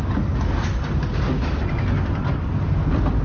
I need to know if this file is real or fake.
real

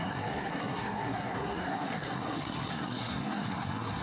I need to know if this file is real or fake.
fake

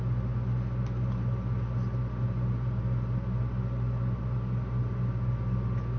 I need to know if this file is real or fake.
real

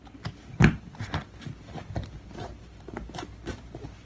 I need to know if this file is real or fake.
real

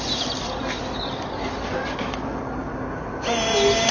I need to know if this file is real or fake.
real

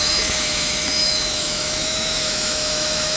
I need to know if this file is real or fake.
fake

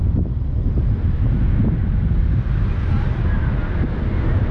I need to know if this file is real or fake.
real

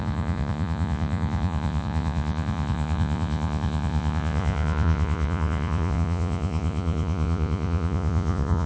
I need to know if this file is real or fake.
fake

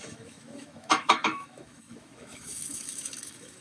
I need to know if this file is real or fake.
fake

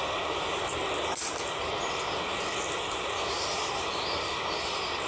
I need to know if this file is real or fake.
real